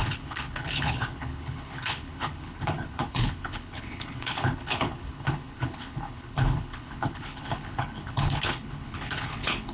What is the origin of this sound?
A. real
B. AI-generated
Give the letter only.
B